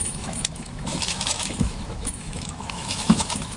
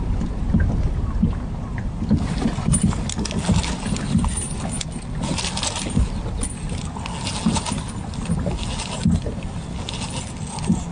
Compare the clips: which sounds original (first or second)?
second